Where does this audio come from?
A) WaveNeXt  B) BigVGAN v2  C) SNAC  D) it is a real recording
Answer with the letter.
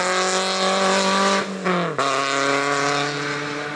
D